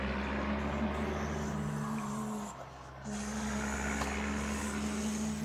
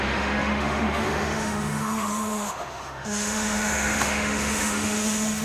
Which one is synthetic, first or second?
second